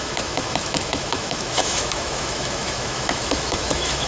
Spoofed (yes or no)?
yes